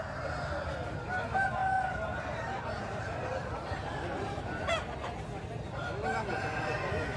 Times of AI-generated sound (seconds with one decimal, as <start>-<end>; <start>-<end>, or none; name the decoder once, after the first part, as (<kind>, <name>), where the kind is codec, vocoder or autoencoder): 1.6-4.6 (vocoder, BigVGAN v2)